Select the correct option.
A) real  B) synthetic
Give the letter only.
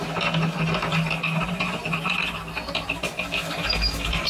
A